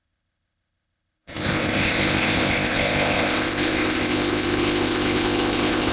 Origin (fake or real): fake